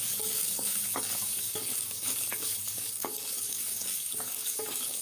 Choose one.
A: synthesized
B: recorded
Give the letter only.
A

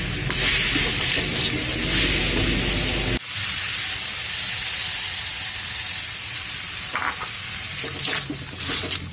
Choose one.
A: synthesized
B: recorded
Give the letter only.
B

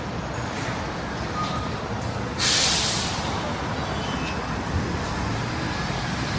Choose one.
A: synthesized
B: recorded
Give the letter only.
B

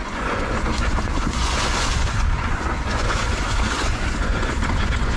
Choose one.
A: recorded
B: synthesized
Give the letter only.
B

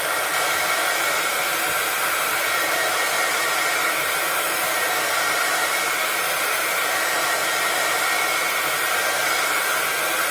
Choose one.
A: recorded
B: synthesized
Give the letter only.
A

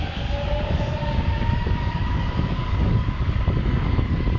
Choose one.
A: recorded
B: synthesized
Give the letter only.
B